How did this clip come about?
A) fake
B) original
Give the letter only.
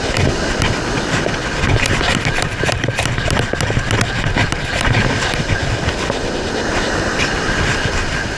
B